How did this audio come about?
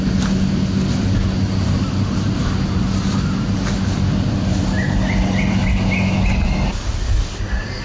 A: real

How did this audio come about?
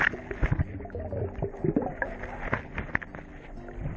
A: real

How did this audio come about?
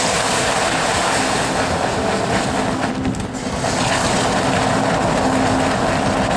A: real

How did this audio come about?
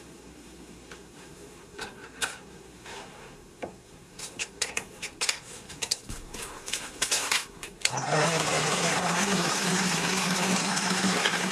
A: fake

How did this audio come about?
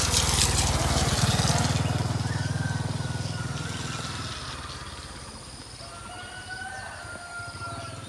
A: real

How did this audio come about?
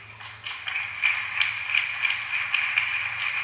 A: real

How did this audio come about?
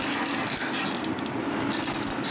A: real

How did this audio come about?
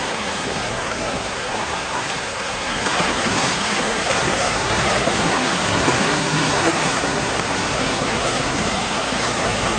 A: fake